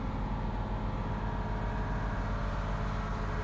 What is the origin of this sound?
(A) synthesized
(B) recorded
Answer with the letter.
B